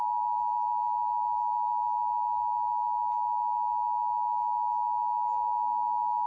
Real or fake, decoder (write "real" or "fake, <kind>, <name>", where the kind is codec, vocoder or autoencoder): real